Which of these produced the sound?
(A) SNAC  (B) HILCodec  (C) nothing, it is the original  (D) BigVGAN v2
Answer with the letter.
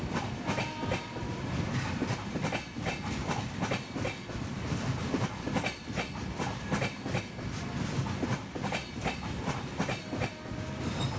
C